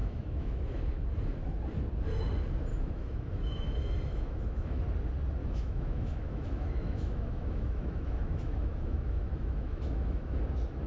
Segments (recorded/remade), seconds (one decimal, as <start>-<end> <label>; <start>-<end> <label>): 0.0-0.8 remade; 0.8-2.7 recorded; 2.7-4.8 remade; 4.8-5.4 recorded; 5.4-10.4 remade; 10.4-10.9 recorded